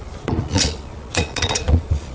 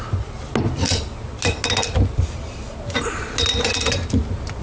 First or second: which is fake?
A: first